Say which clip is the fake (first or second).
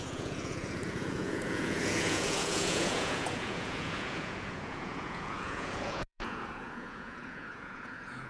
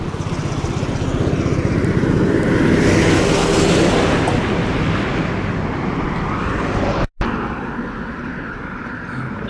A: first